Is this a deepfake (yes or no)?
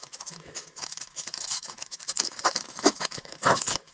yes